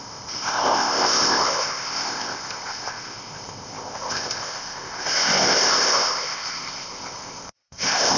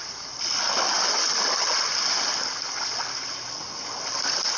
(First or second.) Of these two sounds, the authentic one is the second